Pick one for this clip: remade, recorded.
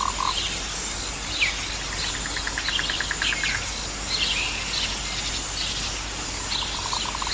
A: recorded